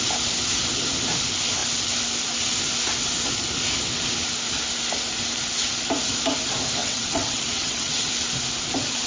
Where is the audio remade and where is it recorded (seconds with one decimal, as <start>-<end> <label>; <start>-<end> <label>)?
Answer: 0.0-6.8 recorded; 6.8-8.1 remade; 8.1-9.1 recorded

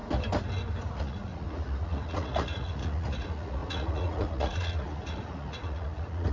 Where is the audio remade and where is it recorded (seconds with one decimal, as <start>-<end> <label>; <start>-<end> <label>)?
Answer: 0.0-0.9 recorded; 0.9-6.3 remade

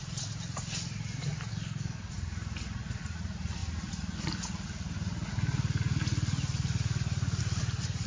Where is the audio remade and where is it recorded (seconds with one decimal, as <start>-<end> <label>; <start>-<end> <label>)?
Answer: 0.0-1.5 recorded; 1.5-2.1 remade; 2.1-8.1 recorded

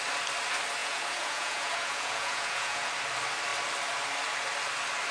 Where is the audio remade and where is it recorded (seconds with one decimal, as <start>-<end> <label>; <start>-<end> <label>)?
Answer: 0.0-0.8 recorded; 0.8-2.9 remade; 2.9-5.1 recorded